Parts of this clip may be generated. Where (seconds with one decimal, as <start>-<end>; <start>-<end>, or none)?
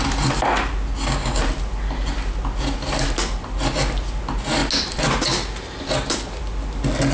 none